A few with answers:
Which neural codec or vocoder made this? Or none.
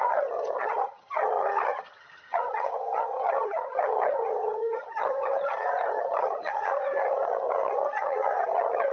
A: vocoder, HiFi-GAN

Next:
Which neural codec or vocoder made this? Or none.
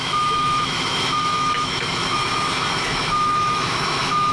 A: autoencoder, DAC-VAE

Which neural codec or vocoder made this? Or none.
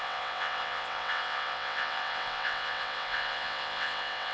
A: vocoder, WaveNeXt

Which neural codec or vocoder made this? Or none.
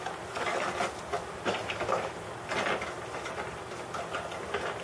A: none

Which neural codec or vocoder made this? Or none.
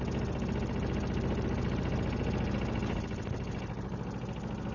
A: none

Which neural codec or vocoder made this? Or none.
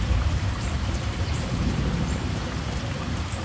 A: vocoder, BigVGAN v2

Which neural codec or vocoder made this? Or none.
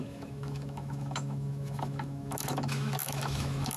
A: autoencoder, DAC-VAE